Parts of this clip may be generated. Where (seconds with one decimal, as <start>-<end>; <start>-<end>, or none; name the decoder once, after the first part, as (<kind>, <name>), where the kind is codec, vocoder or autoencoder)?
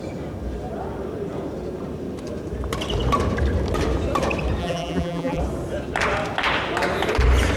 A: 4.6-5.4 (vocoder, BigVGAN v2)